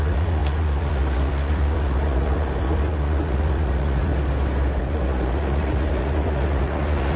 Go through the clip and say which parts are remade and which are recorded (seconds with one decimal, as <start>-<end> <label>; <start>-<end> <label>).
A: 0.0-4.1 remade; 4.1-4.8 recorded; 4.8-7.2 remade